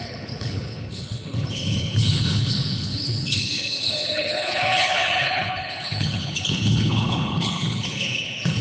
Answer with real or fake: fake